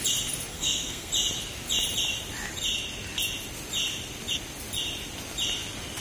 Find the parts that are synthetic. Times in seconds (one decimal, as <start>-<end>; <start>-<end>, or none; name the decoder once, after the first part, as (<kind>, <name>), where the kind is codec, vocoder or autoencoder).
0.5-1.1 (codec, SNAC)